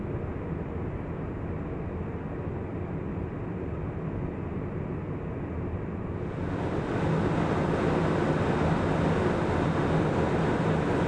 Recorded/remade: recorded